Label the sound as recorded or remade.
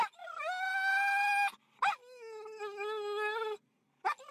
recorded